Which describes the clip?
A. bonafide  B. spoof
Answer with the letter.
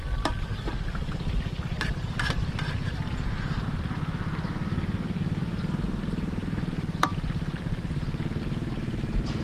B